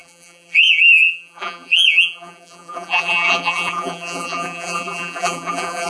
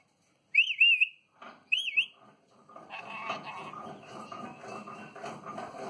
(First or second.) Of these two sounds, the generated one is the first